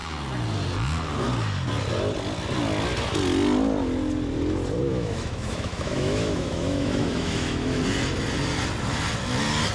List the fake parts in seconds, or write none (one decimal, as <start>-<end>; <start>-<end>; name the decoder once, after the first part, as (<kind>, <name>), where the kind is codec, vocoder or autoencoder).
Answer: 4.9-7.8 (autoencoder, DAC-VAE)